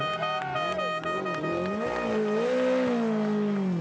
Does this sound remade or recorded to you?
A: recorded